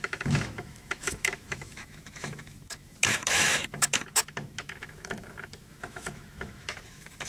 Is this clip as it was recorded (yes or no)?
no